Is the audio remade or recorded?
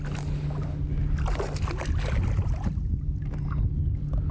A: recorded